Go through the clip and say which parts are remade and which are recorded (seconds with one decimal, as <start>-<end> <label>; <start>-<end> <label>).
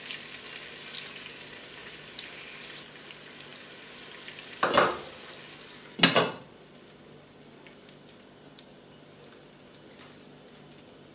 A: 0.0-1.8 recorded; 1.8-2.4 remade; 2.4-11.1 recorded